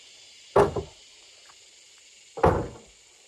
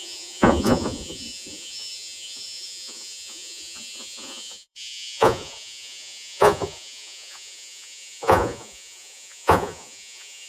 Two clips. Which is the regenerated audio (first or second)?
second